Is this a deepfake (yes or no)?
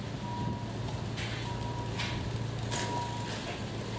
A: no